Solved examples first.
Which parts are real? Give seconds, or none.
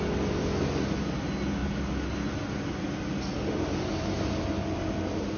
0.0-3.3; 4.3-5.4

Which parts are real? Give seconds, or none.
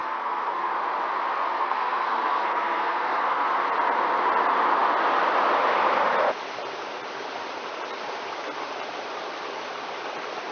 0.7-1.5; 3.6-10.5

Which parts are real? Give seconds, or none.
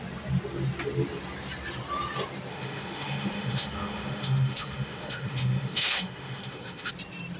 0.0-2.5; 6.9-7.4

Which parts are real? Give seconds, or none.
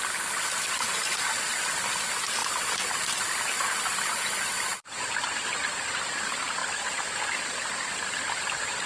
0.0-8.9